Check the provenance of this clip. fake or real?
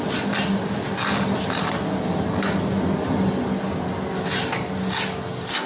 real